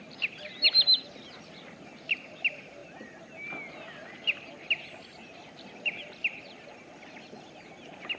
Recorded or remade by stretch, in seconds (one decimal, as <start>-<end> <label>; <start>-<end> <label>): 0.0-8.2 recorded

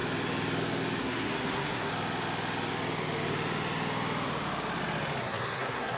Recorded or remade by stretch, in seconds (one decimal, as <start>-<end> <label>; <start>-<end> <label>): 0.0-1.0 recorded; 1.0-1.9 remade; 1.9-5.2 recorded; 5.2-6.0 remade

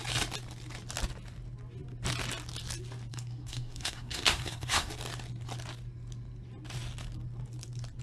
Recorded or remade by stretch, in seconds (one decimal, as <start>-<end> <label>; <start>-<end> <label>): 0.0-3.1 recorded; 3.1-4.9 remade; 4.9-8.0 recorded